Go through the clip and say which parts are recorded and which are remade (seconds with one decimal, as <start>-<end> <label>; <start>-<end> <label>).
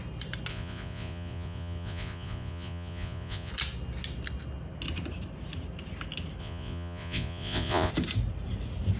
0.0-0.5 recorded; 0.5-3.5 remade; 3.5-6.4 recorded; 6.4-7.9 remade; 7.9-9.0 recorded